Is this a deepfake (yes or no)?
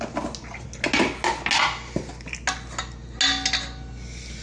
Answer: no